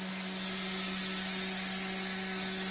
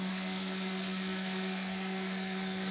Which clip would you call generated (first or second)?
second